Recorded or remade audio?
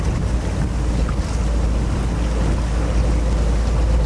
recorded